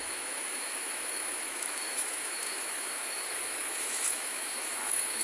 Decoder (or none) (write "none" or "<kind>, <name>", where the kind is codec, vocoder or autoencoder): autoencoder, DAC-VAE